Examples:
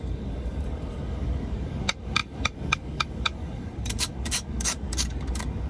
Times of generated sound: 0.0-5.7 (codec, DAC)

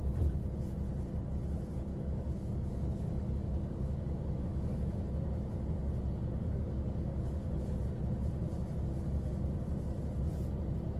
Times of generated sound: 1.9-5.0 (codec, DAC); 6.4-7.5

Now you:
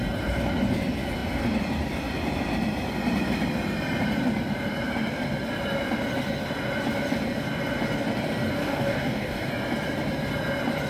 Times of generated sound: 8.6-9.5 (codec, DAC)